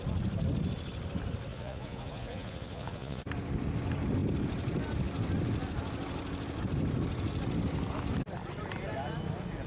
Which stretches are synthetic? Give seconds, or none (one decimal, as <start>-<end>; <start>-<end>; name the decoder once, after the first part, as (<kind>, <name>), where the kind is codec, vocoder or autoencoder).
1.5-3.2 (vocoder, Vocos)